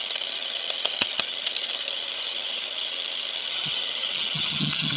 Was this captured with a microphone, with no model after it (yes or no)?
no